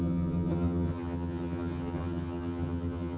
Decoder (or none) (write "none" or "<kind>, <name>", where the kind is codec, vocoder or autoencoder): vocoder, HiFi-GAN